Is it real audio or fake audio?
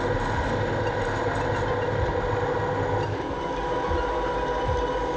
real